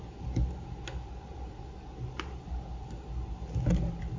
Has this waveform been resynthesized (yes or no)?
no